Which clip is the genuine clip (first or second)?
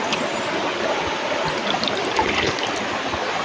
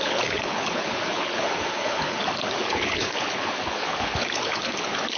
first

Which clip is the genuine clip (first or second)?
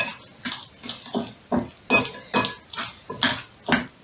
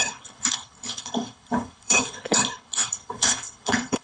first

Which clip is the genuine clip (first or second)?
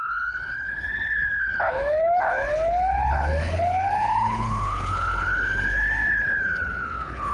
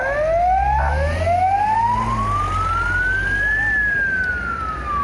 second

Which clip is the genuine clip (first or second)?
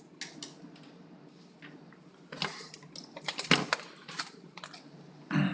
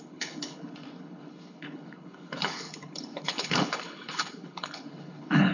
first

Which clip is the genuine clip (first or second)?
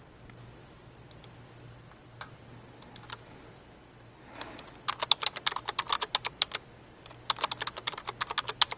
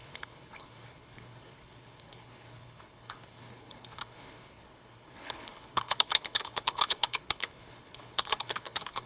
first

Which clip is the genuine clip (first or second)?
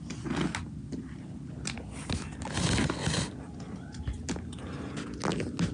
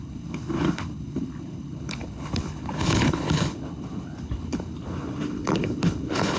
first